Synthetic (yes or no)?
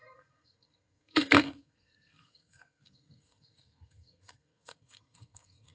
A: yes